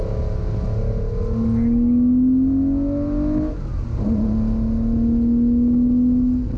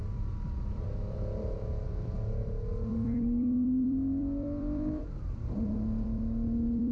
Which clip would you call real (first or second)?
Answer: first